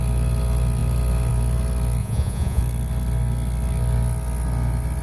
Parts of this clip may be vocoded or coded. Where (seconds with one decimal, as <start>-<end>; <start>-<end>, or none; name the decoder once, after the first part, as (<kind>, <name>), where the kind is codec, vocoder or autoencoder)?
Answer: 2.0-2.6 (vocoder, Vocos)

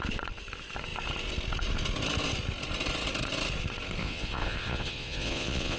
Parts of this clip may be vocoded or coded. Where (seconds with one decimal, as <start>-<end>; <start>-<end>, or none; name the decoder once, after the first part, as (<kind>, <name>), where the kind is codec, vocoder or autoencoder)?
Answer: 4.0-5.8 (vocoder, Vocos)

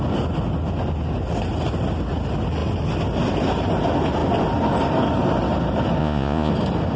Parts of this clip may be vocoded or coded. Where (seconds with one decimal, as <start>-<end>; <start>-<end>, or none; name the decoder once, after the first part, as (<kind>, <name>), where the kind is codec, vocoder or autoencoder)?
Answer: 6.0-6.5 (vocoder, Vocos)

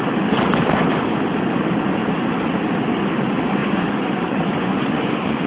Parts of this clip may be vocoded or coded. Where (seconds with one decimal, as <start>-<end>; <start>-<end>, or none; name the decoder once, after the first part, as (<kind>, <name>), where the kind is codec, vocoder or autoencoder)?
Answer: 3.6-5.5 (vocoder, Vocos)